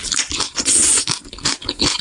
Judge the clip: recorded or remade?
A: recorded